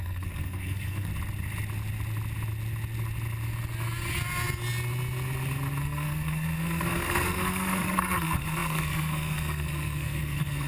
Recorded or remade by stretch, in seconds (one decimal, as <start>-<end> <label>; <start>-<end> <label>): 0.0-1.1 remade; 1.1-5.8 recorded; 5.8-10.7 remade